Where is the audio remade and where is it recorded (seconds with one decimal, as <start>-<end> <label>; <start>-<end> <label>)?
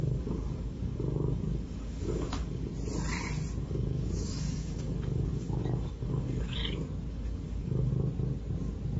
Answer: 0.0-2.7 remade; 2.7-3.6 recorded; 3.6-6.6 remade; 6.6-7.1 recorded; 7.1-7.9 remade; 7.9-9.0 recorded